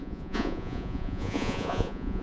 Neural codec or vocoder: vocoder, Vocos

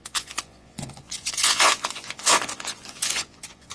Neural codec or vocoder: vocoder, Vocos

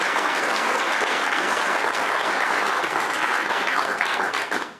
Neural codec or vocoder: codec, SNAC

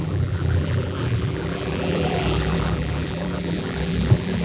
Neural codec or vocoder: vocoder, BigVGAN v2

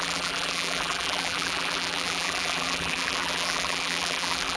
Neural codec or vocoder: vocoder, BigVGAN v2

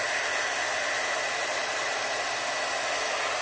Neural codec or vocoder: none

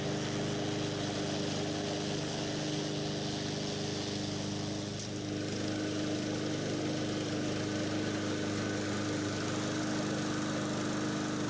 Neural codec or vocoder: none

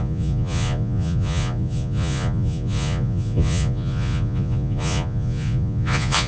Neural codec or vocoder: vocoder, Vocos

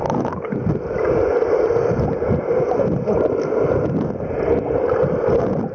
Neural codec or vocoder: none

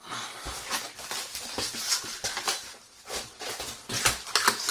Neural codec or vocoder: none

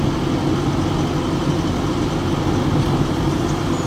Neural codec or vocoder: none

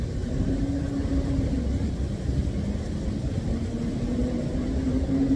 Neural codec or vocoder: none